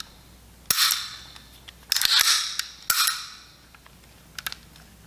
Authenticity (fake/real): real